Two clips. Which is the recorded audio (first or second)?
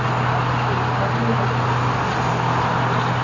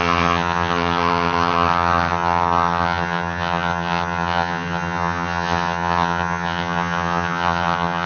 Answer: first